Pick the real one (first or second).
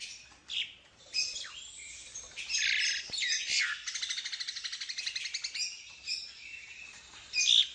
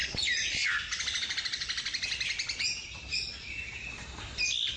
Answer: first